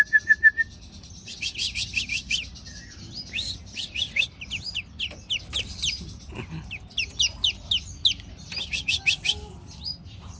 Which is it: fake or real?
real